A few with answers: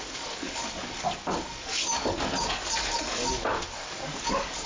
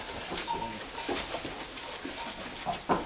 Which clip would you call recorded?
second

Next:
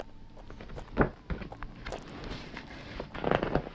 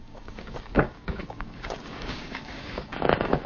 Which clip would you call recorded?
first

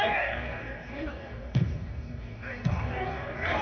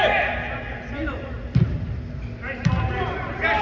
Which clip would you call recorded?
second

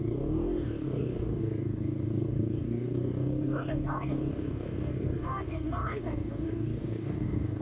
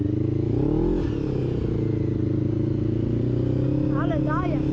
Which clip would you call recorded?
second